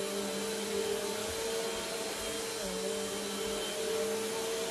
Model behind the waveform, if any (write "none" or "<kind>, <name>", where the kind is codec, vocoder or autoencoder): none